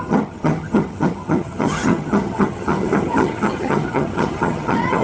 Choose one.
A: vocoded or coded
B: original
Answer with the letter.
A